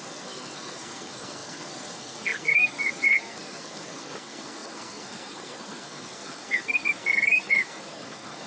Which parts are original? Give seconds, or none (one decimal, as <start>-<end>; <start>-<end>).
none